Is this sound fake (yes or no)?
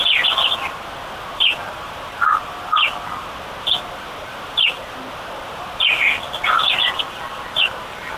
no